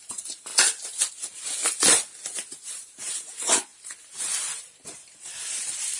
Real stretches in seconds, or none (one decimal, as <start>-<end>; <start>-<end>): 0.5-2.5; 3.7-4.6